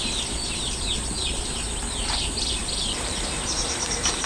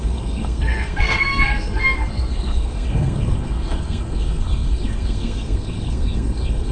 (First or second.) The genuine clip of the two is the first